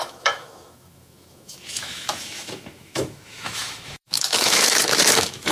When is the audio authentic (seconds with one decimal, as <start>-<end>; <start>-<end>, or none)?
none

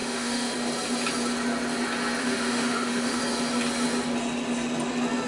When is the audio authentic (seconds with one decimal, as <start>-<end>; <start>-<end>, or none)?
0.5-2.2; 3.2-5.3

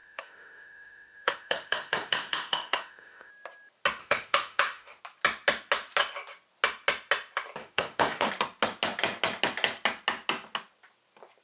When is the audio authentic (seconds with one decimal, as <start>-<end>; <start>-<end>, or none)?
3.3-4.0; 5.0-7.6; 8.3-11.4